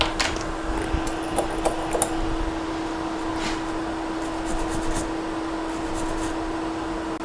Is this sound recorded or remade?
recorded